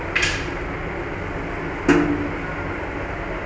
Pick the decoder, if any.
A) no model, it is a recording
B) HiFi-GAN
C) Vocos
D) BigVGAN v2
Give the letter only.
A